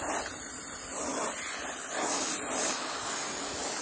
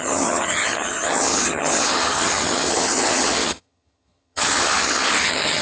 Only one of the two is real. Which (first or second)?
first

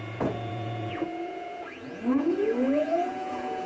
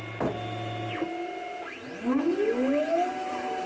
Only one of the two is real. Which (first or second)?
second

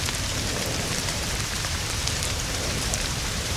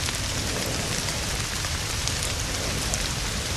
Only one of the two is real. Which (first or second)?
second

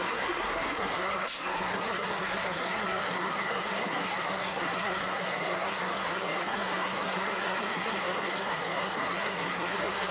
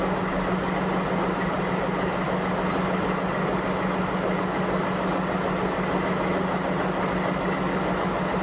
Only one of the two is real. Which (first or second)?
second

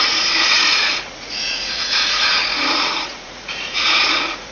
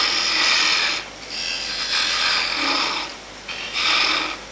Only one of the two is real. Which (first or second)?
second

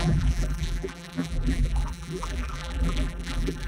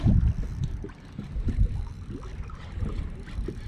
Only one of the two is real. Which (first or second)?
second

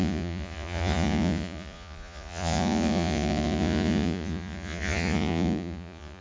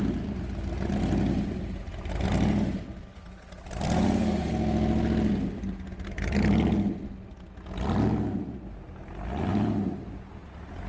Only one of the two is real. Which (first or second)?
second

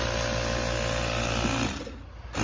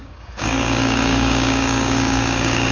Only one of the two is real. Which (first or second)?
first